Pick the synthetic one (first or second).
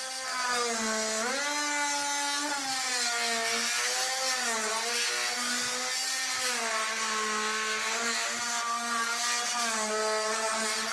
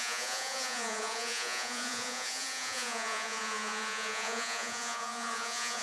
second